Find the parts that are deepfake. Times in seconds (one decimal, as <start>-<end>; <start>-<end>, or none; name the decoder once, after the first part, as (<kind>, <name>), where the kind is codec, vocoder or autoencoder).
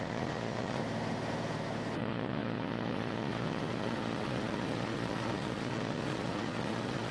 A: 0.0-0.8 (vocoder, Vocos); 2.0-7.1